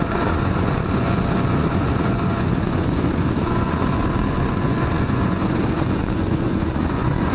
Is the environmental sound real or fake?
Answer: fake